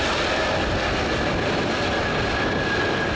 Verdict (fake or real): real